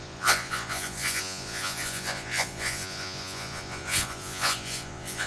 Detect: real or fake fake